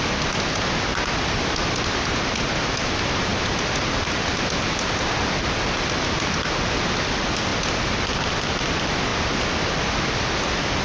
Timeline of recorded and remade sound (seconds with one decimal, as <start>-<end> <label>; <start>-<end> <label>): 0.0-10.8 recorded